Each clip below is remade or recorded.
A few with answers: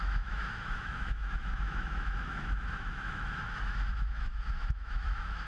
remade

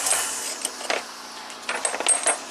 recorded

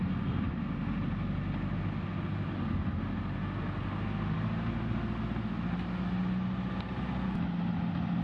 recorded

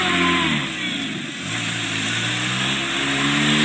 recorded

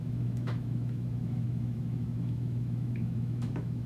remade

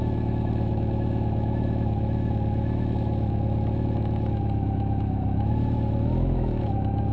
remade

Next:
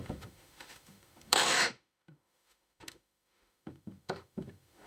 remade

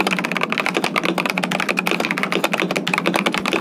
recorded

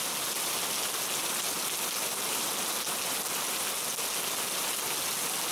recorded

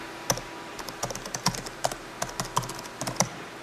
recorded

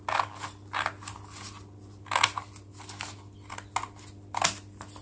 recorded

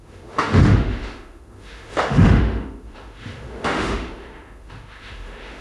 remade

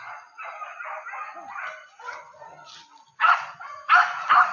recorded